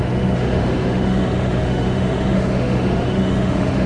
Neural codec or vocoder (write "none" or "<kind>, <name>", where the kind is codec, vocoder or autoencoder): autoencoder, DAC-VAE